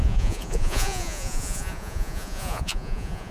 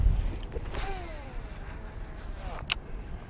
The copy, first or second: first